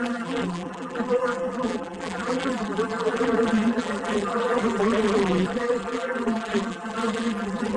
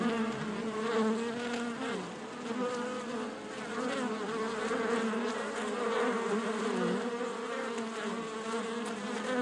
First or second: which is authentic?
second